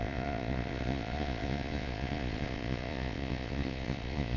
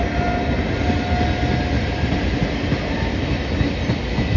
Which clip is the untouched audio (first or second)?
second